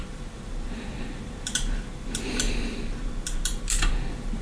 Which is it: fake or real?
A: fake